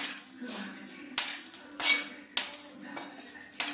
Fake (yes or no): no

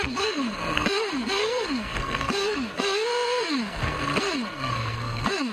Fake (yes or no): yes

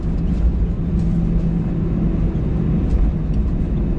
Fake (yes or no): no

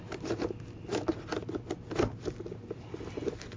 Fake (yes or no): no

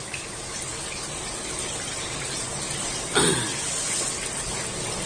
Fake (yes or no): no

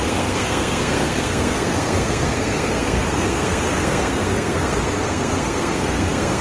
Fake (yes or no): yes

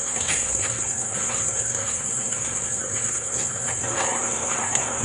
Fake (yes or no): yes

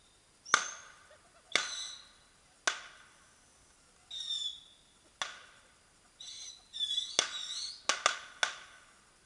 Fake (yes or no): no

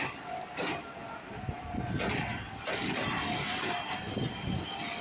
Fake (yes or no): no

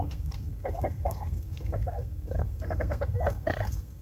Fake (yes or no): yes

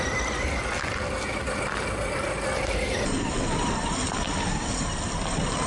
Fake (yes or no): no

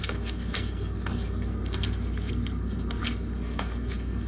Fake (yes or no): yes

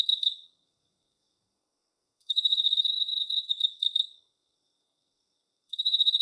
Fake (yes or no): yes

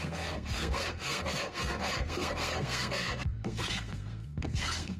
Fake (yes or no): yes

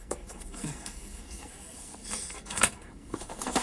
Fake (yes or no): yes